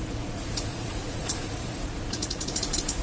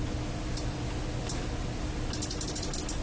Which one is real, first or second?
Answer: second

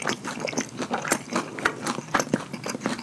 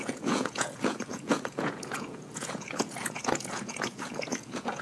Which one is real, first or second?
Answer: first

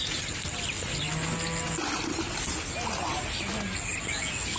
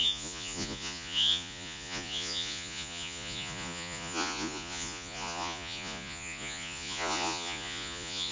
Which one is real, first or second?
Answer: first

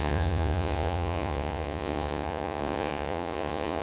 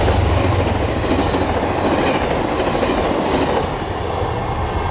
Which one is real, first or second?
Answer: second